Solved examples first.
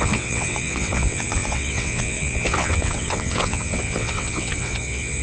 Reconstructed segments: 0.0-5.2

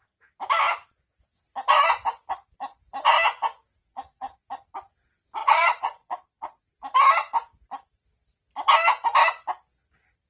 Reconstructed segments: 3.8-4.4; 5.4-6.6

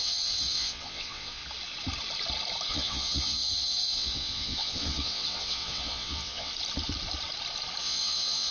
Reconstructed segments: 0.0-1.4; 2.7-6.5; 7.8-8.5

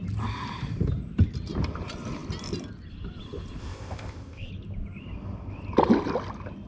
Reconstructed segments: 3.6-4.5